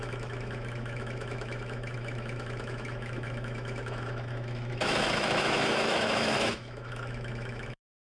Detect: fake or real fake